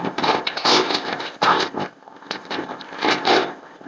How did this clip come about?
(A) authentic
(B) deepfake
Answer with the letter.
B